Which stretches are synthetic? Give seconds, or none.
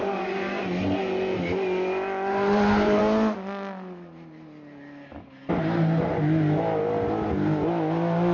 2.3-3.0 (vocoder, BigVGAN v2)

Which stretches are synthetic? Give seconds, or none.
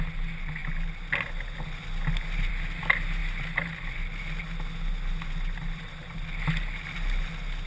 none